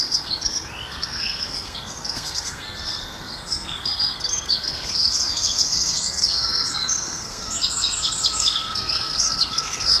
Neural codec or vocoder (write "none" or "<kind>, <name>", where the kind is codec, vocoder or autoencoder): codec, SNAC